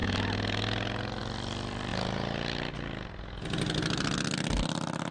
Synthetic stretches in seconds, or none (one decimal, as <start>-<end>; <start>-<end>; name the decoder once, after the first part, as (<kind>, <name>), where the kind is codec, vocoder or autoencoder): none